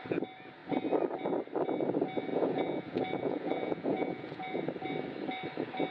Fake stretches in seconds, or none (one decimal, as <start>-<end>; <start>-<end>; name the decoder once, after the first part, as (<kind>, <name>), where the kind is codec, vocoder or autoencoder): 2.3-4.6 (vocoder, Vocos)